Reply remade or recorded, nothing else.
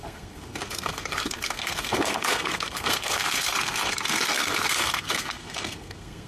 remade